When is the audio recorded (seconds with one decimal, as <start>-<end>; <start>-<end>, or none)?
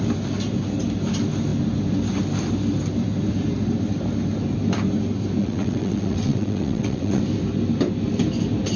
0.0-5.4; 7.2-8.8